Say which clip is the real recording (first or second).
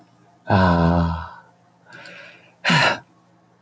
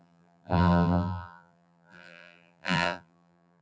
first